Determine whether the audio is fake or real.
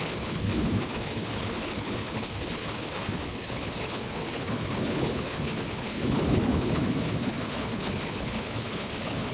fake